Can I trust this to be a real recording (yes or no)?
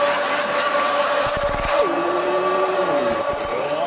yes